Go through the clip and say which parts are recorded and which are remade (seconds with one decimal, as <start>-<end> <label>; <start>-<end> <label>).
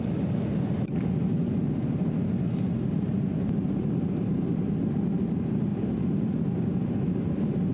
0.0-7.7 recorded